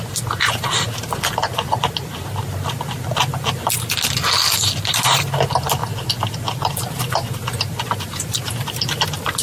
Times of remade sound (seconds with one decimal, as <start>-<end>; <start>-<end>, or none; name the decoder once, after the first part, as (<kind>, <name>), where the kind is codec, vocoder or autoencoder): none